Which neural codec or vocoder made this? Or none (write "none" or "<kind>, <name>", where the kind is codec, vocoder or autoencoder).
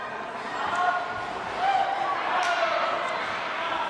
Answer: none